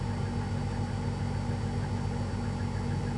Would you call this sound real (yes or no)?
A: yes